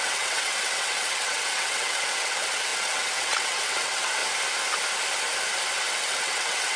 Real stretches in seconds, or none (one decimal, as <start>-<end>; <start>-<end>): 4.2-6.0

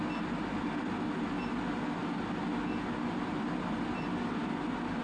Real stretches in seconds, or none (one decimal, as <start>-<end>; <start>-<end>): 0.0-5.0

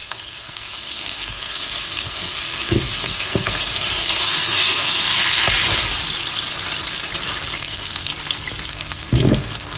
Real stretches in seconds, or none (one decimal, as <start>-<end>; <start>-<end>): 5.4-7.6; 8.1-8.7